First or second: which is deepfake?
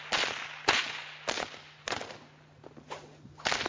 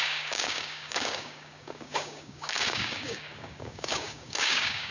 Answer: second